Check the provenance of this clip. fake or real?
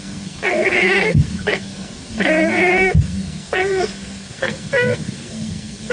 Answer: fake